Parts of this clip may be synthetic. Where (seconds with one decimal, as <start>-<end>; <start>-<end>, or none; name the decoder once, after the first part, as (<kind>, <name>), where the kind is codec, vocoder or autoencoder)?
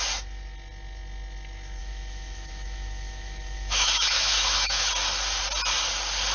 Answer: 1.8-4.9 (autoencoder, DAC-VAE)